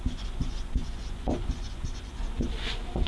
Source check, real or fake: fake